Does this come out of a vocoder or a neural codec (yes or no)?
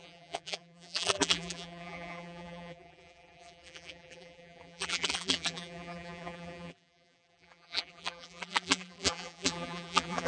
yes